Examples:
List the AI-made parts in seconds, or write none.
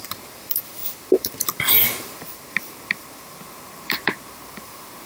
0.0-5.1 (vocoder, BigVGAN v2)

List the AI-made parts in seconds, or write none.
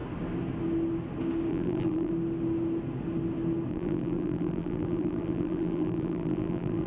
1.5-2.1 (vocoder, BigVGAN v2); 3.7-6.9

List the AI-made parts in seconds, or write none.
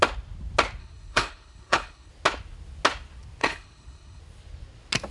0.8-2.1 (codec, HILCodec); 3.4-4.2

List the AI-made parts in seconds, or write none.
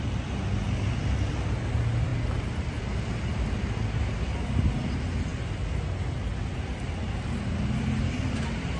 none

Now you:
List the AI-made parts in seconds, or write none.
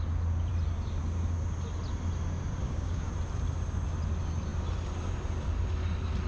2.6-3.1 (codec, DAC)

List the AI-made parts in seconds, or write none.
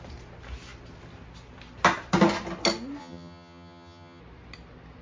3.0-4.2 (vocoder, HiFi-GAN)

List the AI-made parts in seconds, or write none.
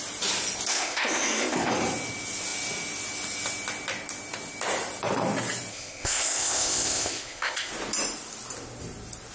0.7-1.7 (codec, ZipCodec); 5.7-7.7